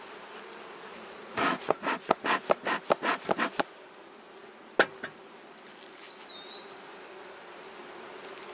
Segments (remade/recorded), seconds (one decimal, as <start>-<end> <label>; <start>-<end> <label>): 0.0-0.9 recorded; 0.9-2.2 remade; 2.2-8.5 recorded